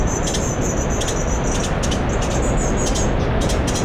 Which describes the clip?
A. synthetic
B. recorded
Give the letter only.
B